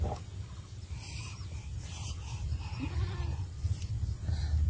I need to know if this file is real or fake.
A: real